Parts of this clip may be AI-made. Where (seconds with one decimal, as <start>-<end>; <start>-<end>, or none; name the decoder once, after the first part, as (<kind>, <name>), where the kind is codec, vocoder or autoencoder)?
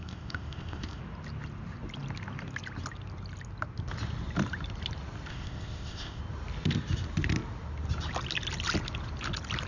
0.0-1.0 (codec, ZipCodec); 5.3-6.2